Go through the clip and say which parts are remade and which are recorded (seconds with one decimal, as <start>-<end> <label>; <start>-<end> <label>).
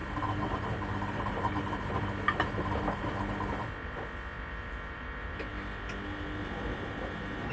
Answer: 0.0-4.5 recorded; 4.5-5.5 remade; 5.5-6.9 recorded; 6.9-7.5 remade